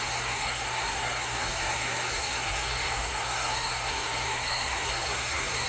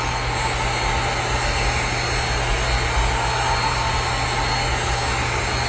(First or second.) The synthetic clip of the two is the first